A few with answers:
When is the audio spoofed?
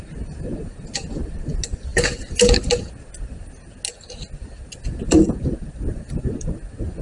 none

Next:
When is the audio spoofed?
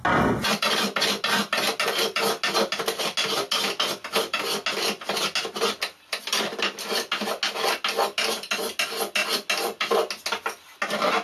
none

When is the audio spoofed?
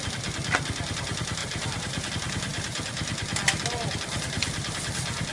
1.4-2.1 (vocoder, BigVGAN v2)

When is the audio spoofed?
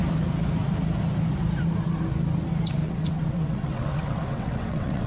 2.8-5.1 (vocoder, WaveNeXt)